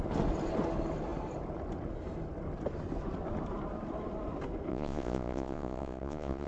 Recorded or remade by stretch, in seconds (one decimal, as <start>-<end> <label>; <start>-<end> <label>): 0.0-4.7 recorded; 4.7-6.5 remade

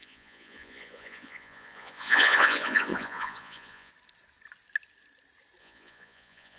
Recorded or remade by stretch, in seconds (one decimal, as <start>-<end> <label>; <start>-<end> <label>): 0.0-3.9 remade; 3.9-5.6 recorded; 5.6-6.6 remade

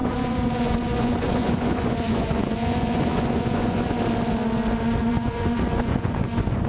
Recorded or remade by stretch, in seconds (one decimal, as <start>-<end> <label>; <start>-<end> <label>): 0.0-4.0 remade; 4.0-5.0 recorded; 5.0-6.7 remade

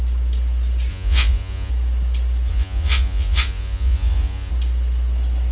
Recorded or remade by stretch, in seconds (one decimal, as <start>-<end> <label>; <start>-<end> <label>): 0.0-0.9 recorded; 0.9-1.7 remade; 1.7-2.5 recorded; 2.5-4.5 remade; 4.5-5.5 recorded

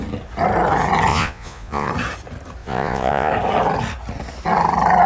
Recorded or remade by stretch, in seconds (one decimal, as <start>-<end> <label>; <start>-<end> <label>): 0.0-1.1 recorded; 1.1-1.9 remade; 1.9-2.6 recorded; 2.6-3.3 remade; 3.3-5.1 recorded

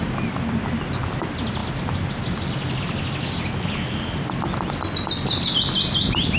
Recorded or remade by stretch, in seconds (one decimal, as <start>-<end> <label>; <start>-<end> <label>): 0.0-6.4 recorded

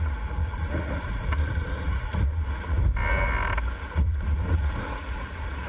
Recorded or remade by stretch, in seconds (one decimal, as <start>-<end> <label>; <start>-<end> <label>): 0.0-2.8 remade; 2.8-3.8 recorded; 3.8-5.7 remade

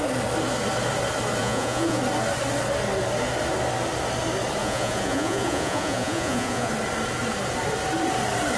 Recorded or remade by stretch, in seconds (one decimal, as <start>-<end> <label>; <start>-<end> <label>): 0.0-1.4 recorded; 1.4-2.0 remade; 2.0-4.6 recorded; 4.6-6.7 remade; 6.7-8.6 recorded